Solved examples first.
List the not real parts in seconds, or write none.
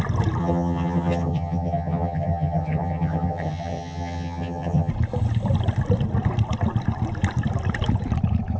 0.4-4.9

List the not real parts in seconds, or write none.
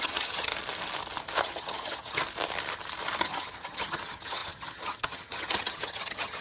0.0-0.5; 1.4-2.2; 3.2-6.4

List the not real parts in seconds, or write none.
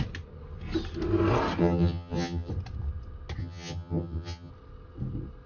1.6-2.5; 3.4-4.5